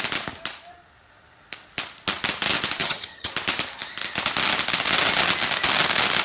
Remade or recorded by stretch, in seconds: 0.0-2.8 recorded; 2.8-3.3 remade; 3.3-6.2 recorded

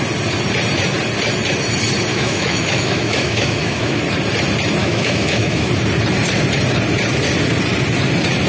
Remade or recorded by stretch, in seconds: 0.0-2.1 recorded; 2.1-4.0 remade; 4.0-4.8 recorded; 4.8-5.7 remade; 5.7-8.5 recorded

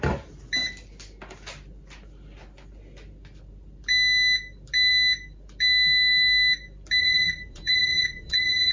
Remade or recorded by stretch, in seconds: 0.0-7.0 recorded; 7.0-8.7 remade